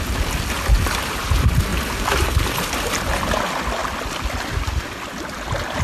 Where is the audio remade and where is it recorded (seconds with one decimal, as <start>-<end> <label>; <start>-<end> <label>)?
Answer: 0.0-5.8 recorded